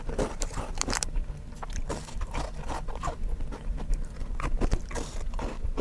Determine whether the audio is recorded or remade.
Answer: remade